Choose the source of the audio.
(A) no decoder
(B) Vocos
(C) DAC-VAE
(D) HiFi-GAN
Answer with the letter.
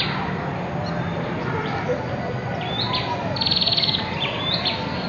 A